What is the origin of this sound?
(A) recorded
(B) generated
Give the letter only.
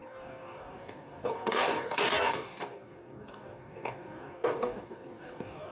B